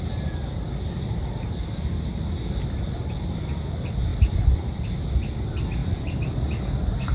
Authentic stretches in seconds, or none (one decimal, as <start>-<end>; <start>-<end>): 0.0-4.1; 5.0-5.8; 6.5-7.1